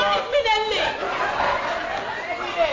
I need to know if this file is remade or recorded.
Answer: recorded